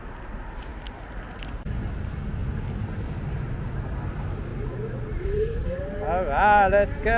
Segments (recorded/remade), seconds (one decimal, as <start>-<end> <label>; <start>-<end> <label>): 0.0-2.4 recorded; 2.4-3.7 remade; 3.7-4.5 recorded; 4.5-5.8 remade; 5.8-7.2 recorded